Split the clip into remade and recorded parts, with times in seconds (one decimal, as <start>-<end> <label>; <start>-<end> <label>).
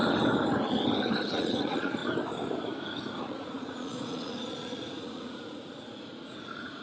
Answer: 0.0-1.3 recorded; 1.3-2.0 remade; 2.0-3.2 recorded; 3.2-6.8 remade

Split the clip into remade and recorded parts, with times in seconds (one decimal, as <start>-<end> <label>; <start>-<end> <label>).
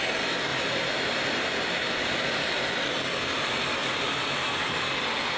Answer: 0.0-0.5 recorded; 0.5-2.5 remade; 2.5-3.8 recorded; 3.8-4.8 remade; 4.8-5.4 recorded